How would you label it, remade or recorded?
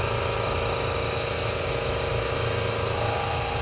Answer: recorded